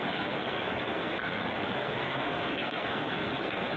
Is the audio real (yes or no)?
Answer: no